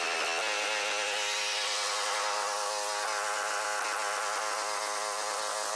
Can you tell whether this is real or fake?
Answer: real